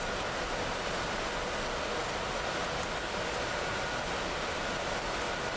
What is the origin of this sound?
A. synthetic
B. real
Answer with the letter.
B